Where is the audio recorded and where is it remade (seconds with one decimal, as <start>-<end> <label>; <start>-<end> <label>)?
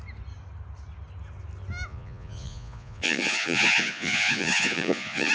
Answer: 0.0-1.9 recorded; 1.9-5.3 remade